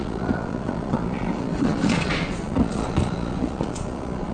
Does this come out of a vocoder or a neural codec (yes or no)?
yes